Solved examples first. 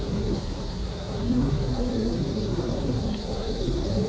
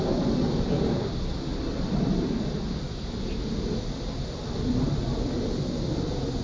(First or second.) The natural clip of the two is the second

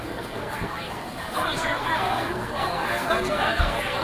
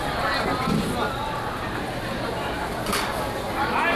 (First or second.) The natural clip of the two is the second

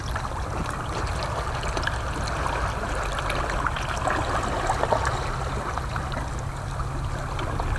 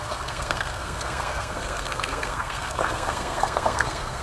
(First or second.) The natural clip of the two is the first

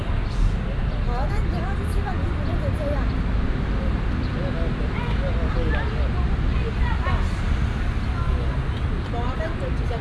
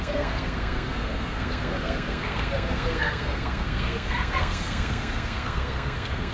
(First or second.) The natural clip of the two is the first